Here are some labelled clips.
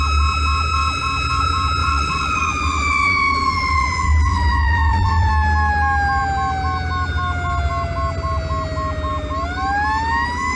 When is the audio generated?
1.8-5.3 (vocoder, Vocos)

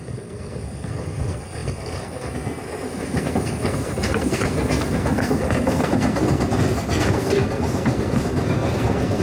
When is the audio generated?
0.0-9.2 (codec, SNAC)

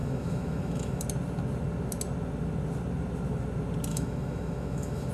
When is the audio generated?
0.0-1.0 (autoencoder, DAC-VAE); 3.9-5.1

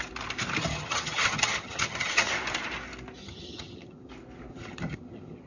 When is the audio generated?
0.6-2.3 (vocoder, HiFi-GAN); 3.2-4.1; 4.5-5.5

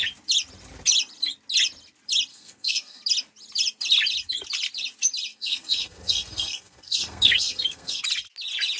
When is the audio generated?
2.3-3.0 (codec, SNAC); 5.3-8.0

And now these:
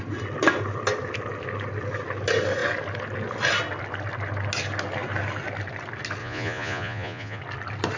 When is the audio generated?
6.2-7.4 (vocoder, Vocos)

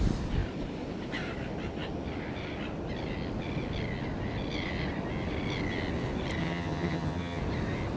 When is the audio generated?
6.4-7.4 (vocoder, HiFi-GAN)

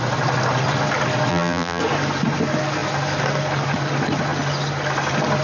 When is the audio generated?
1.3-1.8 (vocoder, BigVGAN v2)